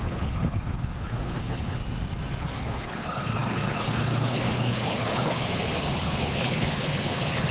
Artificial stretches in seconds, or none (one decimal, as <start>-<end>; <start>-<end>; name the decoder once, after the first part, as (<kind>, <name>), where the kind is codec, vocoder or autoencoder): 0.0-1.8 (codec, HILCodec); 2.4-7.5